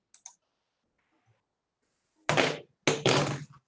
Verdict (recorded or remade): recorded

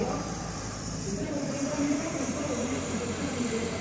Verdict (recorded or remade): remade